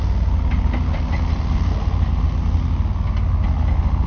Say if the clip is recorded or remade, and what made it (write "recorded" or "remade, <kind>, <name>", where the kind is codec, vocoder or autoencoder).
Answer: recorded